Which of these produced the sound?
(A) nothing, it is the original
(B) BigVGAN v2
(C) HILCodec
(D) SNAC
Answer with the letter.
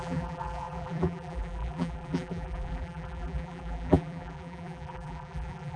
B